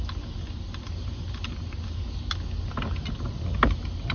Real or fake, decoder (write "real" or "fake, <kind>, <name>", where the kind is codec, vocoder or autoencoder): real